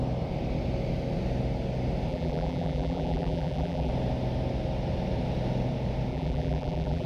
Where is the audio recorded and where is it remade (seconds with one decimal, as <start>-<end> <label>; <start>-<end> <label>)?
0.0-2.1 recorded; 2.1-3.9 remade; 3.9-6.1 recorded; 6.1-7.1 remade